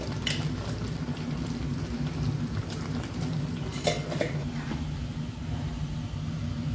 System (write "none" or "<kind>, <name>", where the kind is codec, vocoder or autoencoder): none